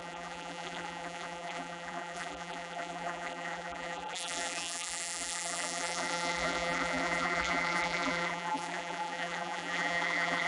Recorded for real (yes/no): no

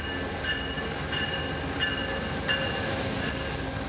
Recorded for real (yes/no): yes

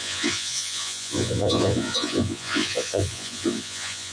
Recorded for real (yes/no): no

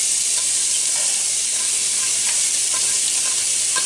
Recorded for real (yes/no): yes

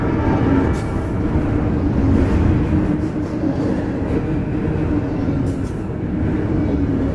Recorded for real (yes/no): yes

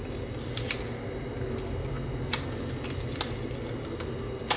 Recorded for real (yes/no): yes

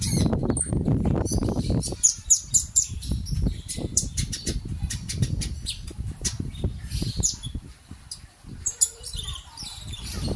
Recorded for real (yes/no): no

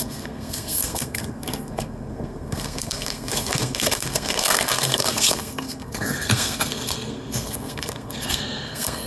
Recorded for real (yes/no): no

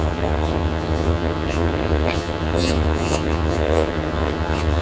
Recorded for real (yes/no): no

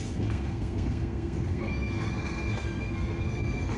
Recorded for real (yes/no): no